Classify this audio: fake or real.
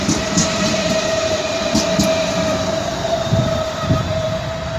fake